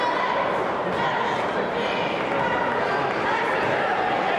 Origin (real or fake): real